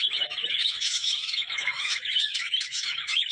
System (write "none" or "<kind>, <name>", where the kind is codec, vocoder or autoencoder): autoencoder, DAC-VAE